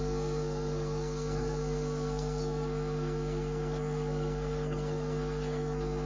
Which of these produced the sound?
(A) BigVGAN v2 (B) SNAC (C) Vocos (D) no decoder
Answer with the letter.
B